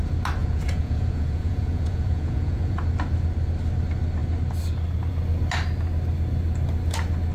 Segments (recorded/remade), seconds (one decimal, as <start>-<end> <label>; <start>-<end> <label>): 0.0-0.4 recorded; 0.4-2.8 remade; 2.8-7.3 recorded